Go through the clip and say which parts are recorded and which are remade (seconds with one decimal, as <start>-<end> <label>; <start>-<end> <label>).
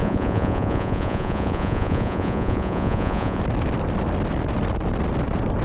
0.0-3.4 remade; 3.4-5.6 recorded